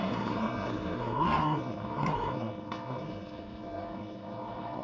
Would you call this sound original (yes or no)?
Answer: no